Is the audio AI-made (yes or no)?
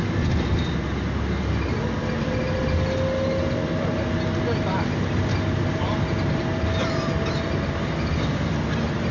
no